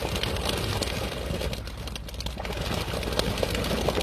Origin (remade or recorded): recorded